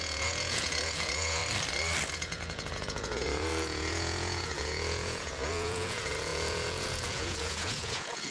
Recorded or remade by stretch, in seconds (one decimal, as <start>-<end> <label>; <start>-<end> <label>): 0.0-1.4 remade; 1.4-2.1 recorded; 2.1-8.3 remade